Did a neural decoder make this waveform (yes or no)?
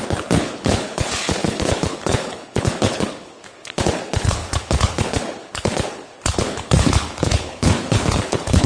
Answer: yes